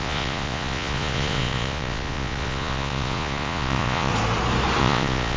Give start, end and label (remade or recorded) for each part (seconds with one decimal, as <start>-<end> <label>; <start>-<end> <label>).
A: 0.0-4.1 remade; 4.1-4.8 recorded; 4.8-5.4 remade